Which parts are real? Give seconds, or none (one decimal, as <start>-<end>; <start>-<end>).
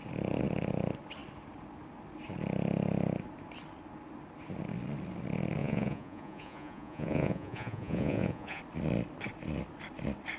0.0-5.6; 8.6-10.4